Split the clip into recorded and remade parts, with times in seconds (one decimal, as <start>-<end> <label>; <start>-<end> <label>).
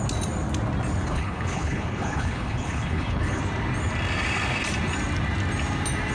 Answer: 0.0-1.0 recorded; 1.0-3.4 remade; 3.4-6.1 recorded